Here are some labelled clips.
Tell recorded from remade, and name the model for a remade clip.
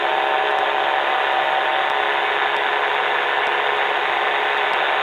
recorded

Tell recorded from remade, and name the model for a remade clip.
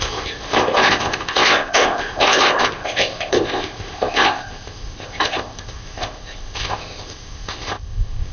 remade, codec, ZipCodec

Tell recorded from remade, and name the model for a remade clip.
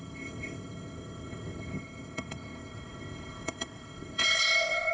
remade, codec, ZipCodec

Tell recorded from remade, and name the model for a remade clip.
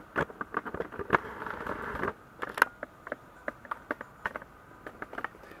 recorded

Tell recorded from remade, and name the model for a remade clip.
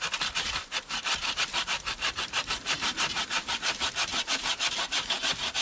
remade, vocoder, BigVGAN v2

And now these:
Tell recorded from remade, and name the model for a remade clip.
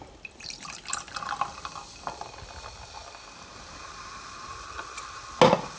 recorded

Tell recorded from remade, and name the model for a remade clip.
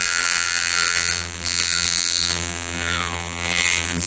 remade, vocoder, BigVGAN v2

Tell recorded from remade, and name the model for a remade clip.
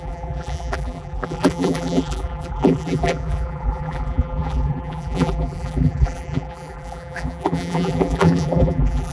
remade, vocoder, BigVGAN v2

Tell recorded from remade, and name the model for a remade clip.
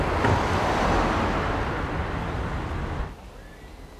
recorded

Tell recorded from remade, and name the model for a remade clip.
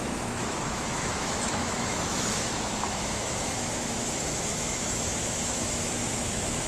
remade, autoencoder, DAC-VAE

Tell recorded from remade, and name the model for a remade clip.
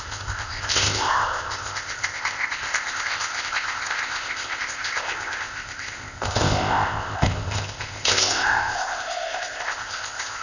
remade, codec, ZipCodec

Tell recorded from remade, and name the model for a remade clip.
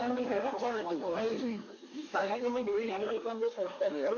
remade, codec, SNAC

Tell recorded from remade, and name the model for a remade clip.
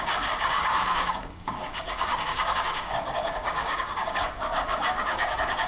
remade, codec, DAC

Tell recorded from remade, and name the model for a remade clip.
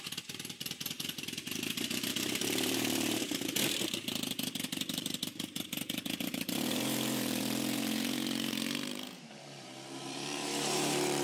remade, vocoder, BigVGAN v2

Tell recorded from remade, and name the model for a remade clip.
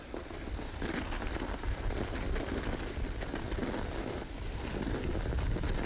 recorded